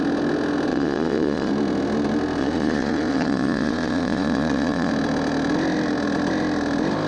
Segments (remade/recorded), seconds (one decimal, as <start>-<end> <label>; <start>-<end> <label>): 0.0-0.7 recorded; 0.7-1.5 remade; 1.5-2.4 recorded; 2.4-4.9 remade; 4.9-7.1 recorded